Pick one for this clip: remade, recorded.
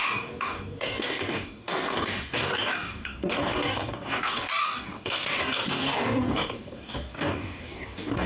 remade